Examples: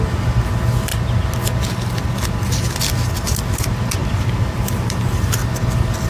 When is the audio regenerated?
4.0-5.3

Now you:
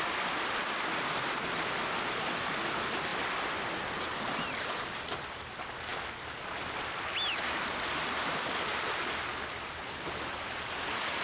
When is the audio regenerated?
none